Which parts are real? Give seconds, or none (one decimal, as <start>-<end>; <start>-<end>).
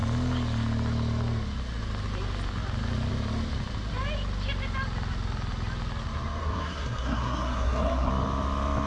0.0-6.4; 8.1-8.9